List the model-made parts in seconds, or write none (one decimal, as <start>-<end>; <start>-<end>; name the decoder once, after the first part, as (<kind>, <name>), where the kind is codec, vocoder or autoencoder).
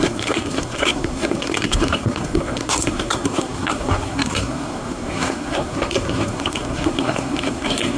0.0-8.0 (codec, SNAC)